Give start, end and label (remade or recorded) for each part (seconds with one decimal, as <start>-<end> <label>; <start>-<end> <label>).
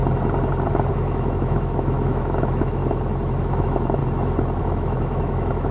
0.0-0.9 recorded; 0.9-2.8 remade; 2.8-3.4 recorded; 3.4-4.0 remade; 4.0-4.6 recorded; 4.6-5.7 remade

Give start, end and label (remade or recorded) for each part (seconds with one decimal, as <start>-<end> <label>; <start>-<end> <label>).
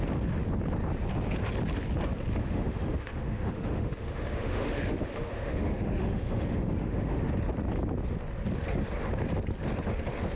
0.0-2.4 recorded; 2.4-7.3 remade; 7.3-10.4 recorded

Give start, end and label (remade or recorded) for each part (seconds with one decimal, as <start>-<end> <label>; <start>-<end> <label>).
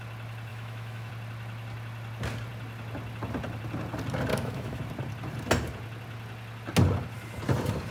0.0-0.5 recorded; 0.5-1.1 remade; 1.1-4.3 recorded; 4.3-4.8 remade; 4.8-7.9 recorded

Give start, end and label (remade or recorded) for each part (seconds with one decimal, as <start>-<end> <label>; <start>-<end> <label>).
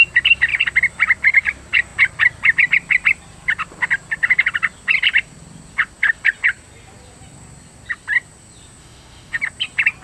0.0-8.8 recorded; 8.8-9.4 remade; 9.4-10.0 recorded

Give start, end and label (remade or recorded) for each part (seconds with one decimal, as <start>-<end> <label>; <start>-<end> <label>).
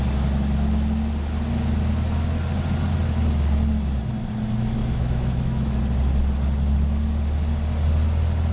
0.0-4.8 recorded; 4.8-5.8 remade; 5.8-8.5 recorded